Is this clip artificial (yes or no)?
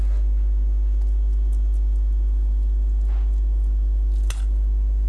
no